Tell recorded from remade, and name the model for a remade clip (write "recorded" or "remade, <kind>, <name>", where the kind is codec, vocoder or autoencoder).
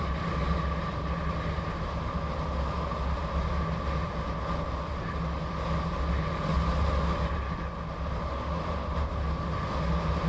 recorded